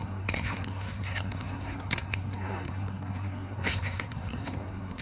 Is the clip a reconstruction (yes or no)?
yes